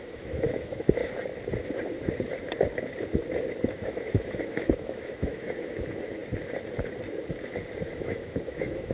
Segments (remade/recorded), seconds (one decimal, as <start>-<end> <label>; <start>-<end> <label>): 0.0-1.0 remade; 1.0-3.7 recorded; 3.7-6.2 remade; 6.2-7.8 recorded; 7.8-8.9 remade